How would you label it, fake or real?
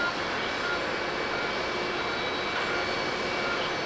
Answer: real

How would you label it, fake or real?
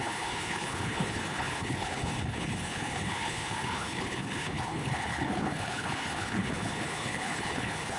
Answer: fake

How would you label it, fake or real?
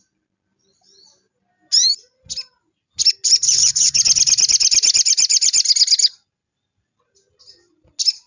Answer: real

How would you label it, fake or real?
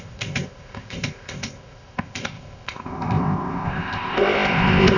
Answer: fake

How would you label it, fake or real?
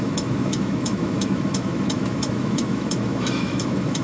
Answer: fake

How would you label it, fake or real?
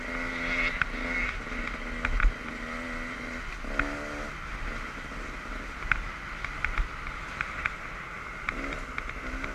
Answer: real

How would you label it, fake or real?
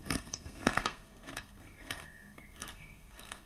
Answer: fake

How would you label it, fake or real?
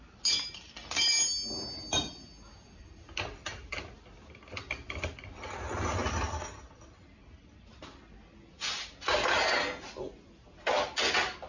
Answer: real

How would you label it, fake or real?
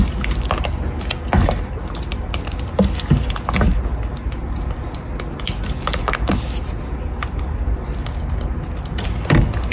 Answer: real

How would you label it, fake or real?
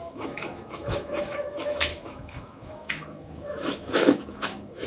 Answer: fake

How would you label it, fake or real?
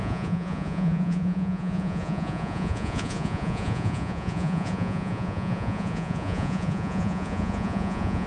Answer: fake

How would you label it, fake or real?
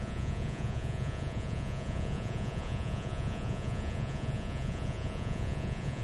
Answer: fake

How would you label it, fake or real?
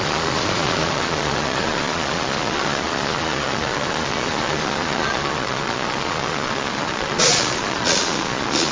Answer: fake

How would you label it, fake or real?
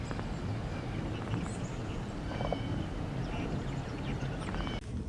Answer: real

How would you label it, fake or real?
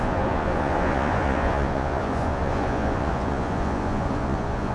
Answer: fake